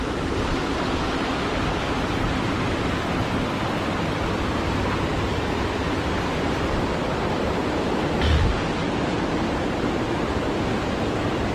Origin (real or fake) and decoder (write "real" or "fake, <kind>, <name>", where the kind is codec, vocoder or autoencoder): real